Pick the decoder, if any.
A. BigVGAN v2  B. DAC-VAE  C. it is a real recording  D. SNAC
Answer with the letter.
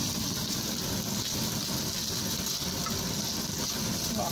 C